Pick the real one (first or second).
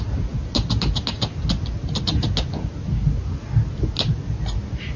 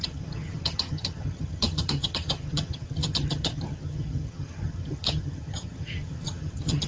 first